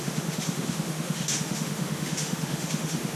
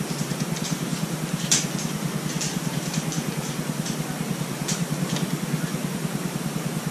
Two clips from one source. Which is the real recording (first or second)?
second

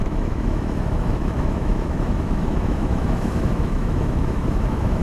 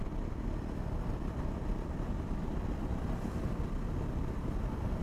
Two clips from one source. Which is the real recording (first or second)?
second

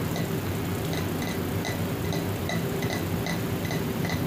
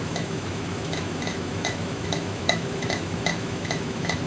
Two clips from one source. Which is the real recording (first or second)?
first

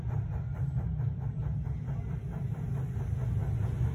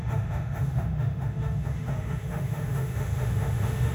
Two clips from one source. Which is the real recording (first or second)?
first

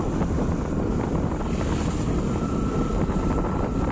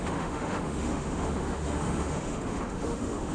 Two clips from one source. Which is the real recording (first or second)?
first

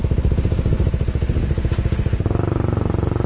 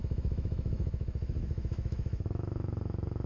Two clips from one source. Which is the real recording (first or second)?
first